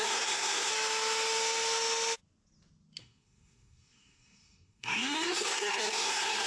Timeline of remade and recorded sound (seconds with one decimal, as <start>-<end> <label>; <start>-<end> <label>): 0.0-0.7 remade; 0.7-3.0 recorded; 3.0-6.5 remade